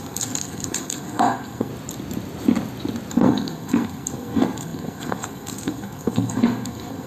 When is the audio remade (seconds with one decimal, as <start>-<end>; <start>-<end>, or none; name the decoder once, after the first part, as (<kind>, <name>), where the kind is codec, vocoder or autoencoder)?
0.0-1.7 (codec, SNAC); 3.1-7.1